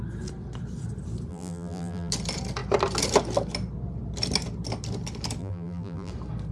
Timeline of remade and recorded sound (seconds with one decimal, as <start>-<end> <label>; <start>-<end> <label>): 0.0-1.3 recorded; 1.3-2.1 remade; 2.1-5.4 recorded; 5.4-6.1 remade; 6.1-6.5 recorded